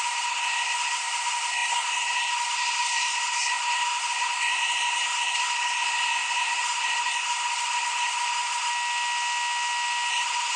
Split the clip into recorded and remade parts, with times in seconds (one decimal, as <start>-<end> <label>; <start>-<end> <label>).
0.0-8.7 remade; 8.7-10.1 recorded; 10.1-10.6 remade